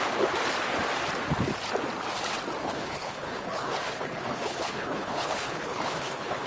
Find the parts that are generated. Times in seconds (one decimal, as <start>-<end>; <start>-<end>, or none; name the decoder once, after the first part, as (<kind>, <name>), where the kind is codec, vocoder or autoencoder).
2.6-6.5 (codec, HILCodec)

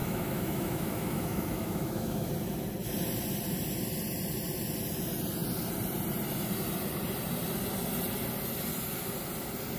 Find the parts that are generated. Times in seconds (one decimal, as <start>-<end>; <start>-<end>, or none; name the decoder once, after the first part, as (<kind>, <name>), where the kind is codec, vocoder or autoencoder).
0.0-2.3 (autoencoder, DAC-VAE)

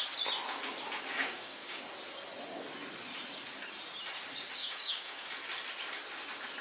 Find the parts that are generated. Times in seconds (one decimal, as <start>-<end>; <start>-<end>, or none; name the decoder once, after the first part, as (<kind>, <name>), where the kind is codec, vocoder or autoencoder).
1.2-1.8 (codec, DAC); 4.6-5.3

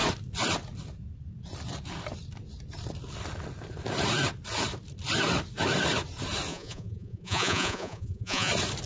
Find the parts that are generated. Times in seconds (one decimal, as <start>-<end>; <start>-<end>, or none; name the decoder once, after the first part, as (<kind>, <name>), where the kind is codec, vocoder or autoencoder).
6.5-8.5 (vocoder, Vocos)

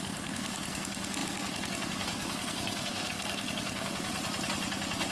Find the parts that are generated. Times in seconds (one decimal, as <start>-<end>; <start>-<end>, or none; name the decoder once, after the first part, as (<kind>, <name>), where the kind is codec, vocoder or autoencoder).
0.0-4.1 (codec, SNAC)